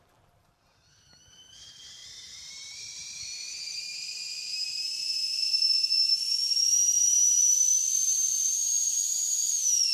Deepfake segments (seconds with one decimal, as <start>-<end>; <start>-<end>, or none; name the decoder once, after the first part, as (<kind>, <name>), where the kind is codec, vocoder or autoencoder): 0.0-9.9 (vocoder, BigVGAN v2)